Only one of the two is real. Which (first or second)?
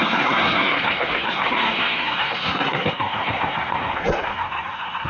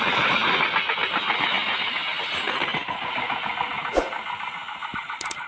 second